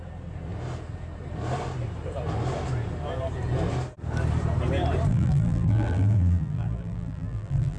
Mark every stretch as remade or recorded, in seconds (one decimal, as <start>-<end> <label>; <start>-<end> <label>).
0.0-5.1 recorded; 5.1-7.8 remade

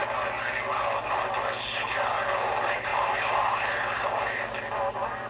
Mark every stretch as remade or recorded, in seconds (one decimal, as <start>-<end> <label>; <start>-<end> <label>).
0.0-2.1 recorded; 2.1-5.3 remade